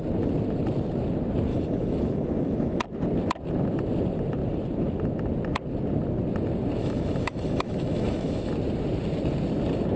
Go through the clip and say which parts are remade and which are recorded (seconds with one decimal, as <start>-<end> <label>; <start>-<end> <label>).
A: 0.0-1.5 recorded; 1.5-2.8 remade; 2.8-6.8 recorded; 6.8-8.5 remade; 8.5-10.0 recorded